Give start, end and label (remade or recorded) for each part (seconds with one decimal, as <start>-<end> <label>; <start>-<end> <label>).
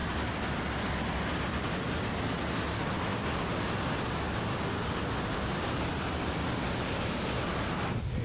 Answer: 0.0-8.2 recorded